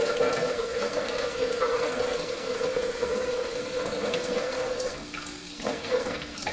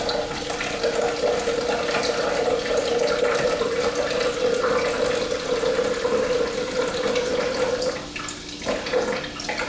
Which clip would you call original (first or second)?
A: second